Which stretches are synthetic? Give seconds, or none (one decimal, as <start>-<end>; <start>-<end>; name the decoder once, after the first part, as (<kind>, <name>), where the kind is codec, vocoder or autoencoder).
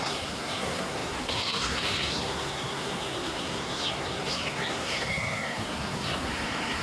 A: 0.0-6.8 (codec, SNAC)